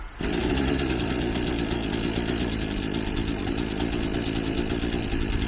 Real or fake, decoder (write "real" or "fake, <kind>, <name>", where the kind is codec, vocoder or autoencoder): real